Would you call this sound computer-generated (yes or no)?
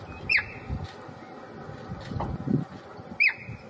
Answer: no